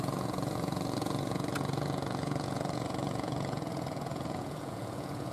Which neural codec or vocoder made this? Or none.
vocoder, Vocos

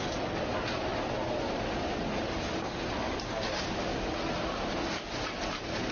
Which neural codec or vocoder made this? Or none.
none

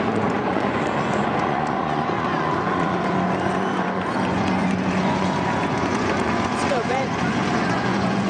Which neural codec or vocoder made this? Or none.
vocoder, Vocos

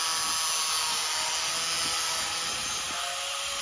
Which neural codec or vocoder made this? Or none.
none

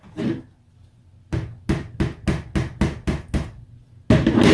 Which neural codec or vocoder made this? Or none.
none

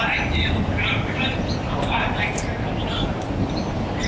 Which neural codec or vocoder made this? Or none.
none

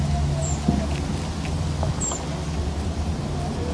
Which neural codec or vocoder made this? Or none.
none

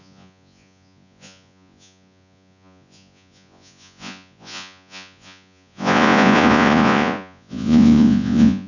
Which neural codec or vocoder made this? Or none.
vocoder, Vocos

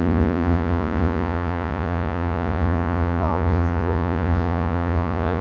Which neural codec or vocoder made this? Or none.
vocoder, Vocos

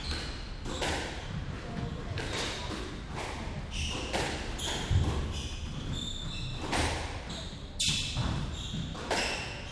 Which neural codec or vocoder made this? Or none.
none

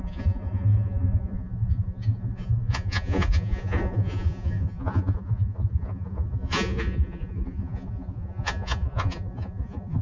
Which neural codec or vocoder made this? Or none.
vocoder, Vocos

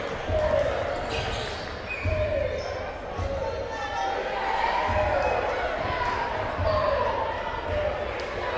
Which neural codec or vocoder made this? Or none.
none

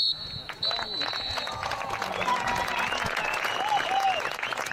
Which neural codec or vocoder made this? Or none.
vocoder, Vocos